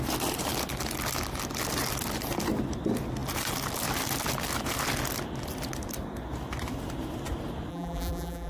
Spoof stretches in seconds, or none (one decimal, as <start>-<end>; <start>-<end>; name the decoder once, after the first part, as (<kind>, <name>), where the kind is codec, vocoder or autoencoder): 7.7-8.5 (vocoder, BigVGAN v2)

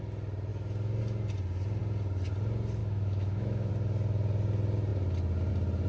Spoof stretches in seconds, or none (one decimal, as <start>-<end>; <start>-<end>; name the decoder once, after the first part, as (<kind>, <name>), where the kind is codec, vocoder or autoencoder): 2.8-3.7 (autoencoder, DAC-VAE)